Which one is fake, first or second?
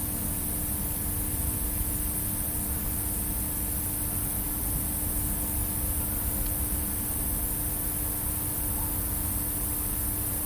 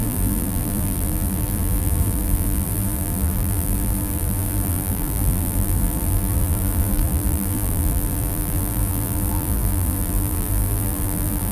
second